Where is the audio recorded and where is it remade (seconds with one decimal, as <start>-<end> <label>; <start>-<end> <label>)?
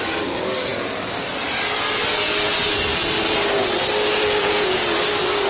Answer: 0.0-4.4 recorded; 4.4-5.0 remade; 5.0-5.5 recorded